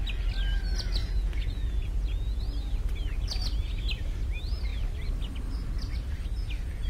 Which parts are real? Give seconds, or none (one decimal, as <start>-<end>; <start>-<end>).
0.0-1.0; 2.4-6.9